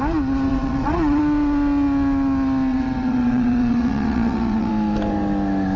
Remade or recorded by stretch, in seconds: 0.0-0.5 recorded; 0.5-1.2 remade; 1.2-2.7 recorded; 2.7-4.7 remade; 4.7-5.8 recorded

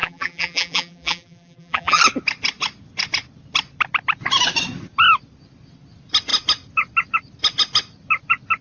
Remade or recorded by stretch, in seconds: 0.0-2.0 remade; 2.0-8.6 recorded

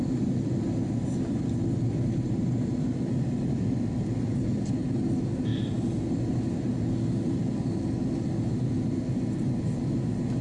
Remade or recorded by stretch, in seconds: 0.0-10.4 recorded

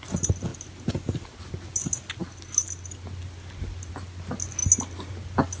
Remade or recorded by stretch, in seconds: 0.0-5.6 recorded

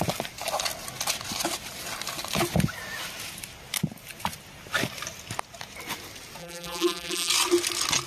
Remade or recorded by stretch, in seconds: 0.0-6.4 recorded; 6.4-7.3 remade; 7.3-8.1 recorded

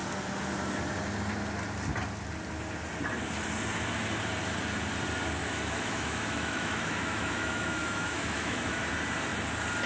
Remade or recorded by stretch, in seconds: 0.0-5.4 recorded; 5.4-8.8 remade; 8.8-9.9 recorded

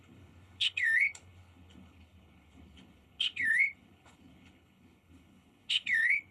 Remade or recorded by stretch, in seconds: 0.0-6.3 remade

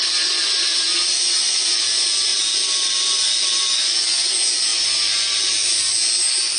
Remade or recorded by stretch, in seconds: 0.0-1.6 remade; 1.6-6.6 recorded